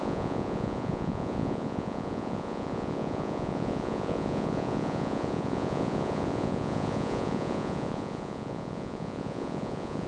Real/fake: fake